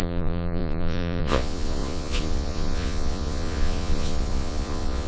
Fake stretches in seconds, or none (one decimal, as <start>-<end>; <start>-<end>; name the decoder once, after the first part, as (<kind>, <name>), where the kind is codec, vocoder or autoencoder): 0.0-5.1 (vocoder, Vocos)